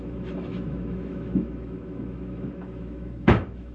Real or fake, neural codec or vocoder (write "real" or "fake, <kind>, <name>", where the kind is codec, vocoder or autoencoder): fake, autoencoder, DAC-VAE